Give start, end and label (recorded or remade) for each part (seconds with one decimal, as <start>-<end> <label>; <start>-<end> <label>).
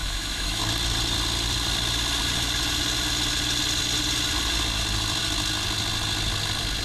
0.0-0.6 remade; 0.6-6.8 recorded